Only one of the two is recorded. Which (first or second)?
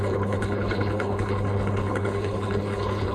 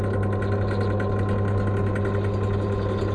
second